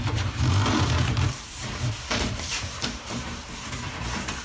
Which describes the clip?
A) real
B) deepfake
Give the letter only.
B